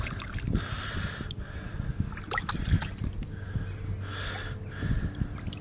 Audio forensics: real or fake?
real